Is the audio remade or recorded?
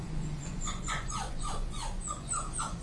remade